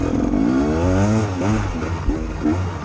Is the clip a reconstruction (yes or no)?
no